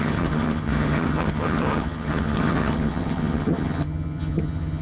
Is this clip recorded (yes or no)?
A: no